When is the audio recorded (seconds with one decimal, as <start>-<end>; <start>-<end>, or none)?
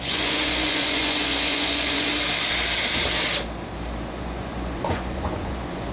2.1-4.1